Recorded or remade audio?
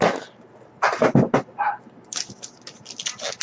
recorded